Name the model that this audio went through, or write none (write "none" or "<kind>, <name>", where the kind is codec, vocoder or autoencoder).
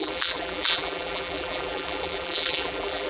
vocoder, BigVGAN v2